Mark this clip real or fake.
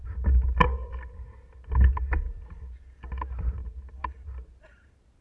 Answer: real